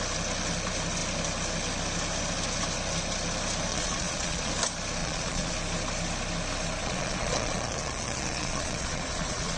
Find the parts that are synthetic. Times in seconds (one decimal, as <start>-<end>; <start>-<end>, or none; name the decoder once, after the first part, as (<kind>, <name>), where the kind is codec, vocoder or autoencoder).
3.7-4.5 (vocoder, Vocos); 5.0-5.5; 6.8-9.6